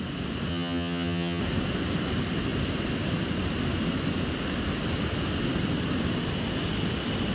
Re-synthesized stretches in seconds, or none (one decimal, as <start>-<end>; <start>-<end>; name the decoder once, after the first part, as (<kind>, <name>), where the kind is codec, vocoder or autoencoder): 0.5-1.4 (vocoder, HiFi-GAN)